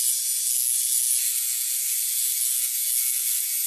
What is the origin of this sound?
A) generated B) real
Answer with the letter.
B